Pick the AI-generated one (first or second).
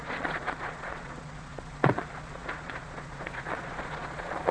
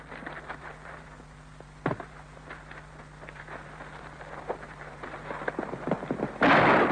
first